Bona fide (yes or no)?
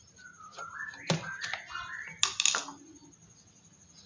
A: yes